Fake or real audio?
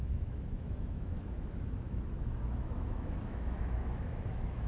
fake